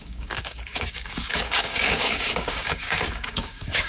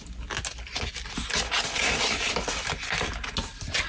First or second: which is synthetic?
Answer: first